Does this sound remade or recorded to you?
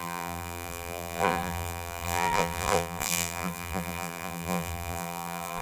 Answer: remade